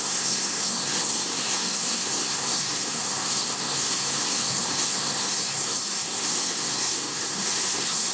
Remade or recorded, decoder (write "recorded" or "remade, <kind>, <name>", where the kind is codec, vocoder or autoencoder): remade, codec, SNAC